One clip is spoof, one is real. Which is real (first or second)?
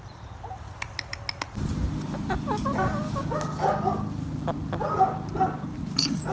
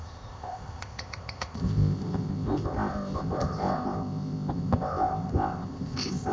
first